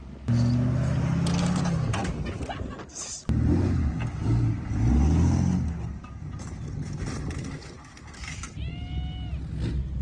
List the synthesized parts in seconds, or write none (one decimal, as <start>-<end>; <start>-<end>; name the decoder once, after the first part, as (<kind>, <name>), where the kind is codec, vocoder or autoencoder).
none